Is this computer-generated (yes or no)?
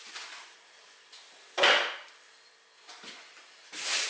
no